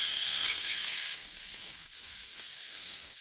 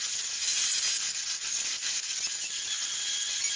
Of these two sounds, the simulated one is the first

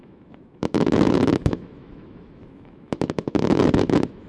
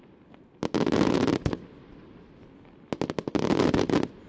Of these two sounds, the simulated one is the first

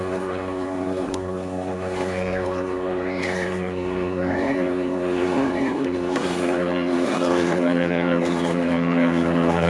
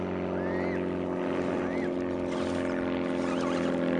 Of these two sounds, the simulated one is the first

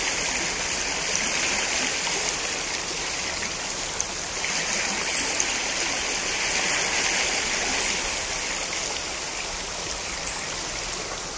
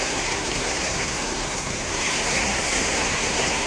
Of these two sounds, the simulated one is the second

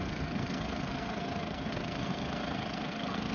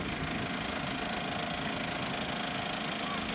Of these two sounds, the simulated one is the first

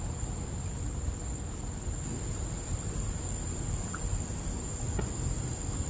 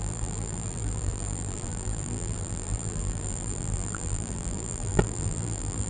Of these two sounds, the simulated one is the second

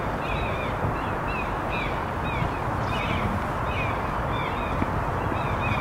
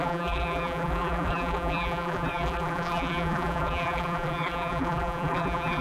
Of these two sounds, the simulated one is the second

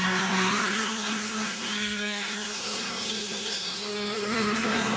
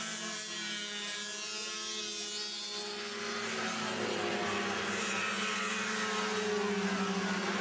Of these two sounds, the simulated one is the first